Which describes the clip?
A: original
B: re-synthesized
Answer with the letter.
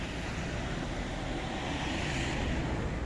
A